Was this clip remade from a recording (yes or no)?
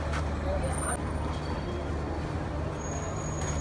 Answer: no